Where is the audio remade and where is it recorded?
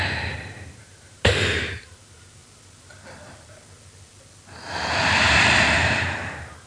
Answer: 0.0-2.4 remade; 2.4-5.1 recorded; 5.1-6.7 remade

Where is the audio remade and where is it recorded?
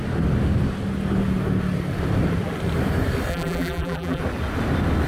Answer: 0.0-3.3 recorded; 3.3-4.2 remade; 4.2-5.1 recorded